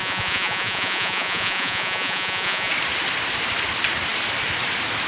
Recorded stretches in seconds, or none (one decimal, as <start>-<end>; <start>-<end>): 2.7-5.1